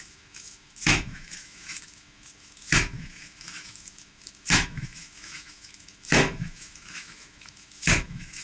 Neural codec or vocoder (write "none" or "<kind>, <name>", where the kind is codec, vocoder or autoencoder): autoencoder, DAC-VAE